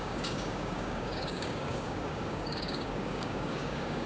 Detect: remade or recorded remade